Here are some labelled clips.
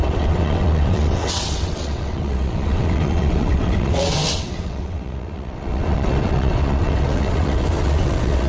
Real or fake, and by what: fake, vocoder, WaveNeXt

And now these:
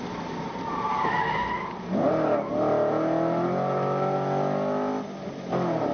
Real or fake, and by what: real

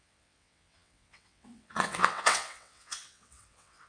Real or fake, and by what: fake, vocoder, WaveNeXt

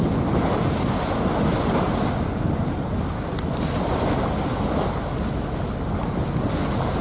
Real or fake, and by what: real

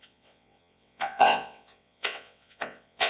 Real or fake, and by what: fake, vocoder, WaveNeXt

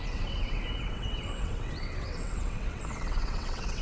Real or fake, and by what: fake, vocoder, WaveNeXt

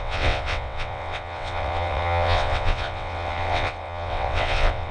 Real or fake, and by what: fake, vocoder, WaveNeXt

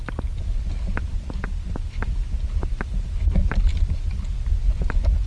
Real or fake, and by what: real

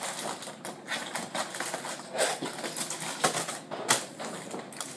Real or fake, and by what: real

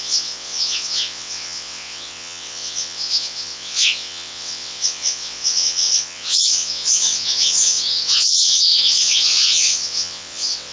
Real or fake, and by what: fake, vocoder, WaveNeXt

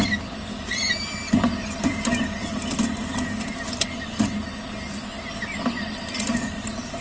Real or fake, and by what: real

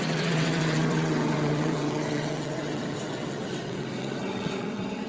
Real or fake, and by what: fake, vocoder, WaveNeXt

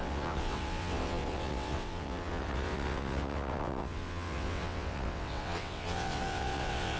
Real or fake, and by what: fake, vocoder, WaveNeXt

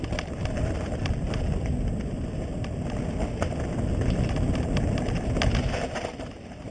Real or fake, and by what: real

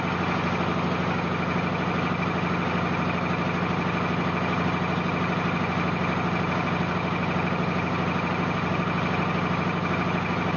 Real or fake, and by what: real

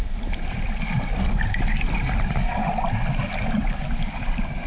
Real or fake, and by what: real